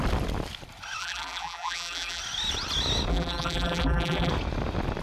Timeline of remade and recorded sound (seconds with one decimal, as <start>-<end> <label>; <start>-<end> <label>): 0.0-1.0 recorded; 1.0-2.2 remade; 2.2-3.1 recorded; 3.1-4.3 remade; 4.3-5.0 recorded